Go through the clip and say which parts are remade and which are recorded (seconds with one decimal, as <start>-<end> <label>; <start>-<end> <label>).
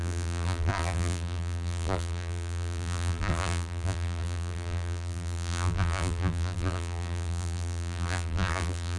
0.0-9.0 remade